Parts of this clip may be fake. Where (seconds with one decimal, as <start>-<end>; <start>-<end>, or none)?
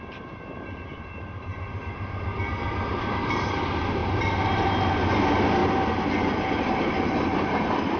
0.0-5.6; 6.4-8.0